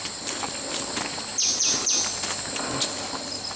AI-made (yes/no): no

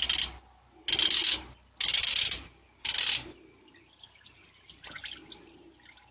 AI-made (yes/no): no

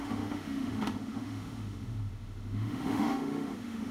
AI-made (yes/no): yes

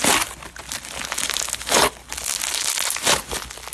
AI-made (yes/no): no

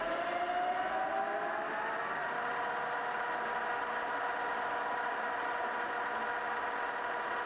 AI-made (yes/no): no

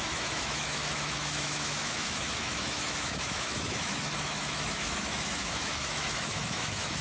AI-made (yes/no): yes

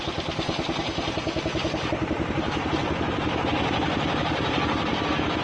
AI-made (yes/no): no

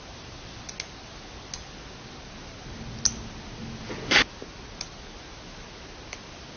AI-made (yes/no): no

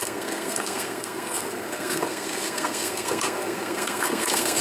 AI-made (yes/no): yes